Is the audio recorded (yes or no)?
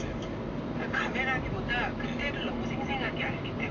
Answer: yes